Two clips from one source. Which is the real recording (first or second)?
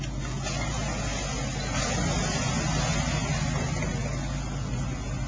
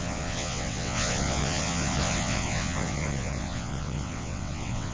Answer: first